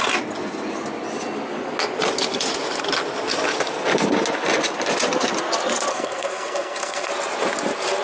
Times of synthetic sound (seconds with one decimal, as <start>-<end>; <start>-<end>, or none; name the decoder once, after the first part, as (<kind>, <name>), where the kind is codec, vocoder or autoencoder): 5.9-7.1 (codec, SNAC)